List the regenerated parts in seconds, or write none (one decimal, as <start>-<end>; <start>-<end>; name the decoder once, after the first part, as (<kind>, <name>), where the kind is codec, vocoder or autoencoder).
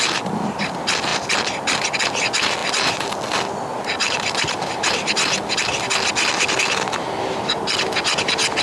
none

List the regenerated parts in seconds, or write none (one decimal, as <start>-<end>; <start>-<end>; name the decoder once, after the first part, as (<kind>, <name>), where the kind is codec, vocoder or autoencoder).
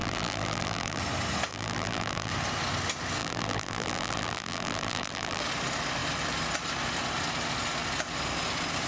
0.0-1.0 (vocoder, BigVGAN v2); 1.5-2.3; 3.2-5.4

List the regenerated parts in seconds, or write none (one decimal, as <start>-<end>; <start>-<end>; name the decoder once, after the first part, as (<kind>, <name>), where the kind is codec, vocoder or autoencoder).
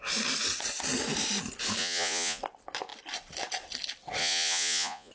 1.8-2.4 (vocoder, Vocos); 4.2-5.1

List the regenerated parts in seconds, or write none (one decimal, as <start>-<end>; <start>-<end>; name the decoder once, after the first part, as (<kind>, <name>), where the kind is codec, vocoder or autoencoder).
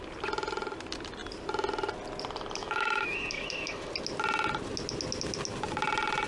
2.6-3.9 (autoencoder, DAC-VAE)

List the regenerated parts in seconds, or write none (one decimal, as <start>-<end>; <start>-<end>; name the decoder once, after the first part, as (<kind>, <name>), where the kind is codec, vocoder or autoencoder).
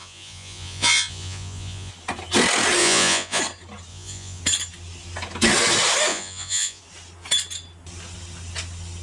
0.0-1.9 (vocoder, Vocos); 2.8-3.4; 3.9-4.4; 6.1-6.8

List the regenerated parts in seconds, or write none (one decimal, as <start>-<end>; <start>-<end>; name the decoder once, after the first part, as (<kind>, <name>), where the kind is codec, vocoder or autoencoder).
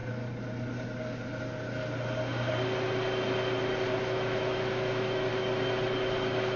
4.0-5.3 (autoencoder, DAC-VAE)